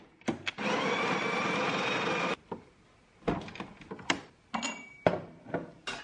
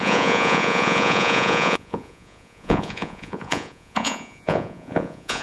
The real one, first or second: first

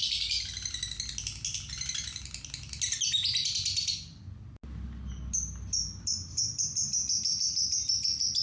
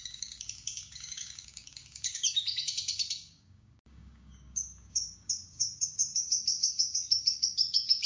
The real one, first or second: first